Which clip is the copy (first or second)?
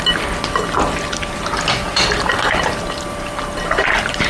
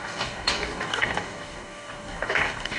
second